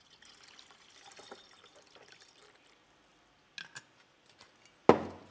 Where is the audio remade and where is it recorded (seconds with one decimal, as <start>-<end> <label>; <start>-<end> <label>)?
0.0-5.3 recorded